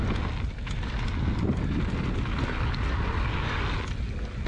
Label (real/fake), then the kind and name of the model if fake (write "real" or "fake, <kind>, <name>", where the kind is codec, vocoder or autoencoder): real